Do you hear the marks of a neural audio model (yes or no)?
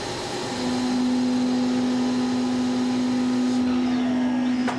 no